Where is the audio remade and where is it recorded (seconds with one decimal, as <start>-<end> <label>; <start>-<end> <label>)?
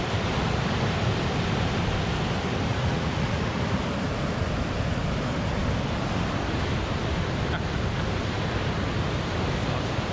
0.0-2.7 recorded; 2.7-3.6 remade; 3.6-10.1 recorded